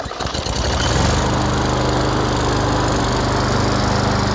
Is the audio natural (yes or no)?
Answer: yes